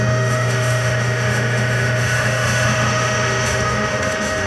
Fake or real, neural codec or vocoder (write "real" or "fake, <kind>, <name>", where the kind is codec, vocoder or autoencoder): fake, autoencoder, DAC-VAE